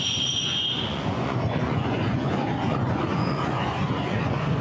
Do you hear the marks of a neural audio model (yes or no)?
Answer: yes